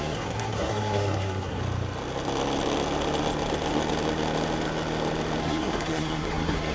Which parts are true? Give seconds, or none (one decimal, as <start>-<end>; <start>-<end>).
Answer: 1.6-5.4